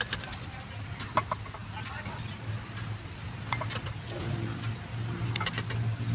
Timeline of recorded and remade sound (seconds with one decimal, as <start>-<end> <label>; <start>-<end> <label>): 0.0-6.1 recorded